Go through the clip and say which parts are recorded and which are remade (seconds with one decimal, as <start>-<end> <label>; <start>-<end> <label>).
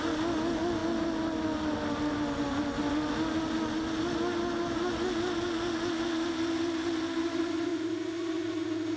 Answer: 0.0-9.0 recorded